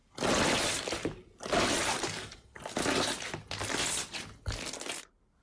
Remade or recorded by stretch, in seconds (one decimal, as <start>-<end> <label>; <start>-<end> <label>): 0.0-5.4 recorded